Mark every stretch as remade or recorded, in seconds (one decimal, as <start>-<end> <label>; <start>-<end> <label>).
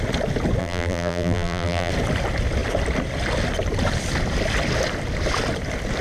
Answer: 0.0-0.6 recorded; 0.6-1.9 remade; 1.9-6.0 recorded